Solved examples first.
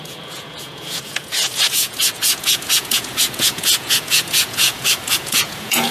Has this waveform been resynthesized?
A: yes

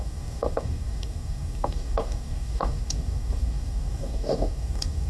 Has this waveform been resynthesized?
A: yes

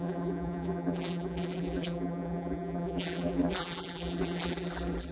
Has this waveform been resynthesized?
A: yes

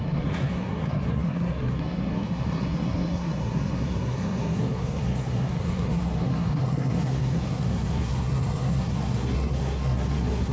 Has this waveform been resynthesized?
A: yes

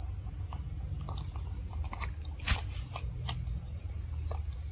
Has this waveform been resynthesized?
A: no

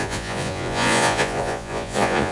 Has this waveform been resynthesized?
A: yes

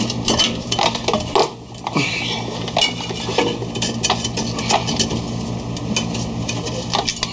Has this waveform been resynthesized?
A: no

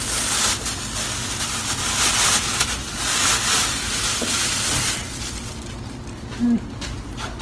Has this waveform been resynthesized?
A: no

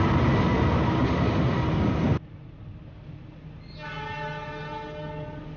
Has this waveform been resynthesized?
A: no